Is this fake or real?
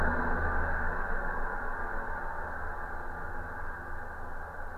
real